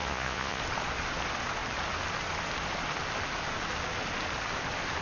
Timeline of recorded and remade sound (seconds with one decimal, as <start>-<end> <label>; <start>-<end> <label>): 0.0-0.6 remade; 0.6-5.0 recorded